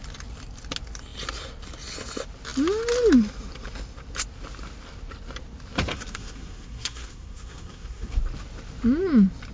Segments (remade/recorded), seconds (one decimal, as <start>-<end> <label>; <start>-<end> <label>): 0.0-5.9 recorded; 5.9-8.2 remade; 8.2-9.5 recorded